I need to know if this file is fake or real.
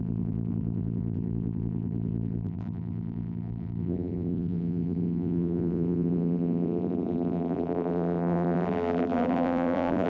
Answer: fake